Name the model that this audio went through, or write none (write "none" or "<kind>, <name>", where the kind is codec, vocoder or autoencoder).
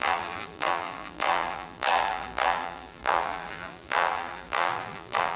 vocoder, BigVGAN v2